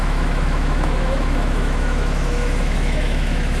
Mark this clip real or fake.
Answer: fake